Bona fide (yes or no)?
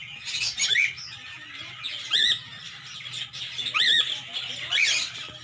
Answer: yes